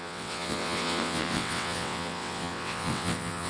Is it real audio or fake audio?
fake